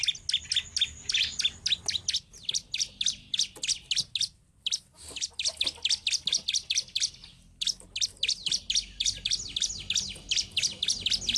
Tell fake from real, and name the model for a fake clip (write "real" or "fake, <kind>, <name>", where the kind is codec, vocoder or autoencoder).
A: real